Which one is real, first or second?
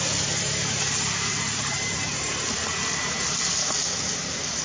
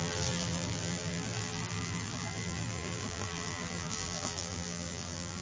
first